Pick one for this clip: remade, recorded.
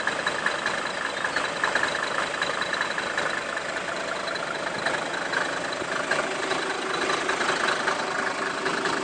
recorded